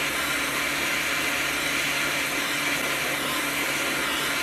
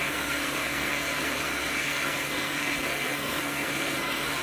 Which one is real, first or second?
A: first